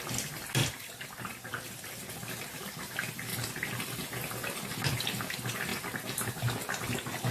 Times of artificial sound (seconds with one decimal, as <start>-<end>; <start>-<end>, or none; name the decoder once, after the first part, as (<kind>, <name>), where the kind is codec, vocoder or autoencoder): 0.6-2.1 (vocoder, BigVGAN v2)